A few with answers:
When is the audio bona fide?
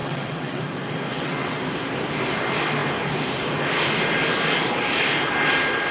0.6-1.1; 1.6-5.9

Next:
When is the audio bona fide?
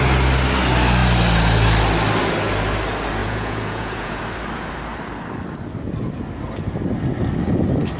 0.0-3.2; 4.2-8.0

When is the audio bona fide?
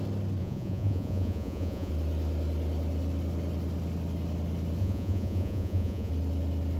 0.0-0.4; 1.9-4.8; 6.1-6.8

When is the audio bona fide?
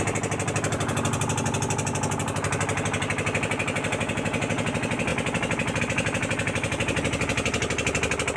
0.0-8.4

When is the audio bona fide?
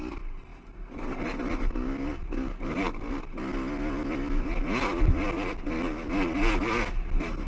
0.0-7.5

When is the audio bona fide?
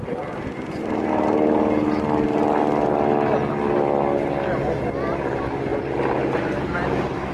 0.0-7.3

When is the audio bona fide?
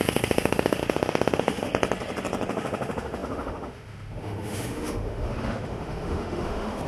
1.7-2.5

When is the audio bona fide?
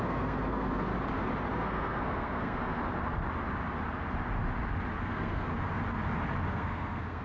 0.9-1.5; 2.8-5.0; 5.5-6.5